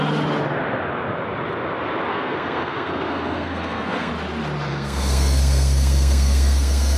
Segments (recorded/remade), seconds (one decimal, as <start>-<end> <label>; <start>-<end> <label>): 0.0-2.1 recorded; 2.1-4.1 remade; 4.1-4.7 recorded; 4.7-7.0 remade